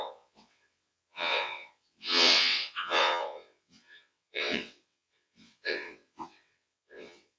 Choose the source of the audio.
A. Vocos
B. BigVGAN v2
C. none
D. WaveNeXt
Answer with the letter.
D